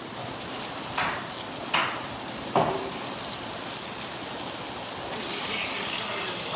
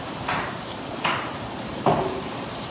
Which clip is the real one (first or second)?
first